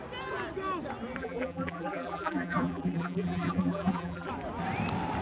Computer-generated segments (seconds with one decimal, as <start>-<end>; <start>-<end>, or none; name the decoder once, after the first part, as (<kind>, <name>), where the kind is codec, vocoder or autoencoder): 1.2-4.3 (vocoder, BigVGAN v2)